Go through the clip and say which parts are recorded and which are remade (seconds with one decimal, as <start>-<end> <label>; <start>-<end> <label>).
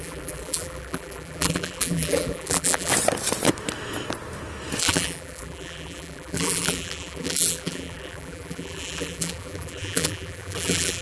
0.0-2.9 remade; 2.9-4.8 recorded; 4.8-11.0 remade